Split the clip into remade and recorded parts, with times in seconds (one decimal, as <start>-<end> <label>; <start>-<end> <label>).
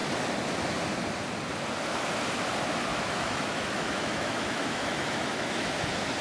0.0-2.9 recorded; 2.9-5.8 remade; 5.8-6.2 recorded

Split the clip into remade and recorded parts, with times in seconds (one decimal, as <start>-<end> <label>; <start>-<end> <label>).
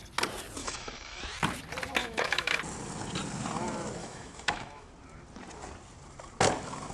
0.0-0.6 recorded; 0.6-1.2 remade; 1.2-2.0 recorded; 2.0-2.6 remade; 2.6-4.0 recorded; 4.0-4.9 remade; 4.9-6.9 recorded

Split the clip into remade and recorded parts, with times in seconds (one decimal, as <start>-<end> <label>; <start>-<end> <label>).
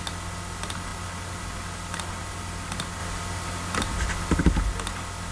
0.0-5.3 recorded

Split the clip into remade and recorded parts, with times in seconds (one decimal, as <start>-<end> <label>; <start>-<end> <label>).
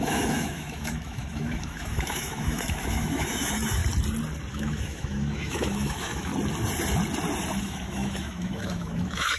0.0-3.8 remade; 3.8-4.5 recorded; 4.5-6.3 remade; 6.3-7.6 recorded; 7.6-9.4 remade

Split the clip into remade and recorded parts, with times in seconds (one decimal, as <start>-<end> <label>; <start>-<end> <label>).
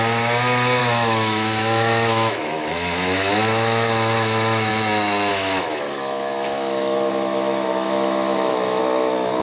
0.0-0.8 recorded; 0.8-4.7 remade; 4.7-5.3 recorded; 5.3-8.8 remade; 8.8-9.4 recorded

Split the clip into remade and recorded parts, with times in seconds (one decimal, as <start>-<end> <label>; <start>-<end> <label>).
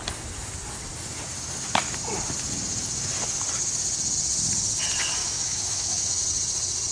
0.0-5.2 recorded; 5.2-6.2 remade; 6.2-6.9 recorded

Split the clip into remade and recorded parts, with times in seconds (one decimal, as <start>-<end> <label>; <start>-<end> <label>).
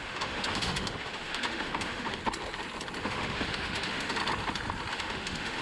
0.0-2.2 remade; 2.2-3.0 recorded; 3.0-4.2 remade; 4.2-4.9 recorded; 4.9-5.6 remade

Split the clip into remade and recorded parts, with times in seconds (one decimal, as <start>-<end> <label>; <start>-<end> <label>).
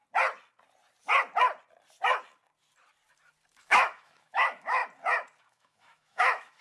0.0-3.6 recorded; 3.6-4.8 remade; 4.8-5.4 recorded; 5.4-6.6 remade